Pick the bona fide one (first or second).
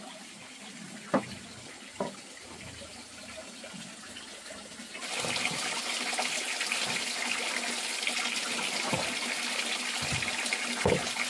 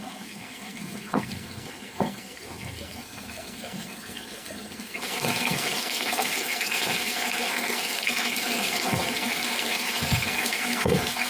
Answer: first